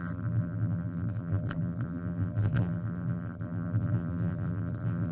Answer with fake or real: fake